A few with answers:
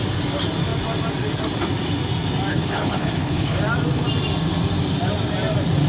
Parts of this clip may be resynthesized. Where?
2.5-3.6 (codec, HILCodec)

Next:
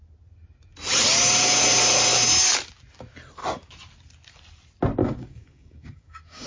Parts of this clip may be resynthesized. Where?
5.0-6.5 (codec, DAC)

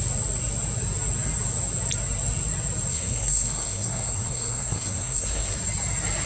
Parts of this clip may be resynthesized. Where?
2.9-5.6 (codec, SNAC)